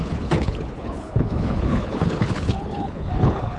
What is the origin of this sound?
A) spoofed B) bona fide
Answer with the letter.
A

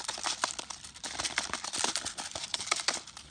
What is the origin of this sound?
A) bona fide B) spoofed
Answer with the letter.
B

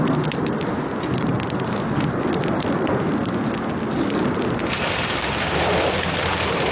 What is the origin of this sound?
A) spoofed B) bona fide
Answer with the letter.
B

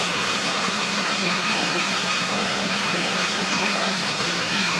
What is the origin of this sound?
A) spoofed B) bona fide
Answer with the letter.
A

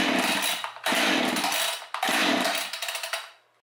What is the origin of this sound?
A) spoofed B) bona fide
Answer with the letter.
B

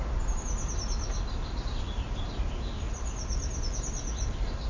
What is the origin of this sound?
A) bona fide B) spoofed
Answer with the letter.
A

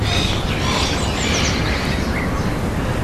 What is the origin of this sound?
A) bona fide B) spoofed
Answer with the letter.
A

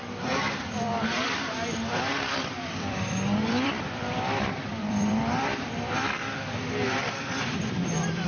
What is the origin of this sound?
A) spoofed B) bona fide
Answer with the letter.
A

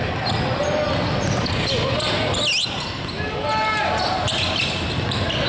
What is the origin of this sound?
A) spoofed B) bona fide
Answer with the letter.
B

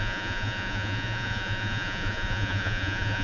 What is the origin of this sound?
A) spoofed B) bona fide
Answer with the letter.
A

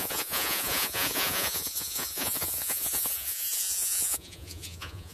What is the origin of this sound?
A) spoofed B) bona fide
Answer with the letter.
A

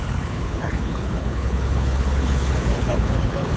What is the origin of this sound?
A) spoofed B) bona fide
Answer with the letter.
A